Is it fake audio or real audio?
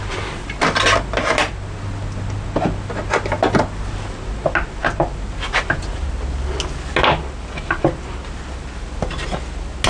real